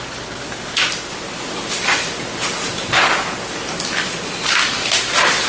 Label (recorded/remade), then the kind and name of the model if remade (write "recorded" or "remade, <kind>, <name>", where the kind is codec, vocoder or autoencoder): recorded